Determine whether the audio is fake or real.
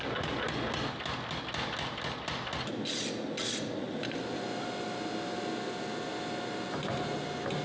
real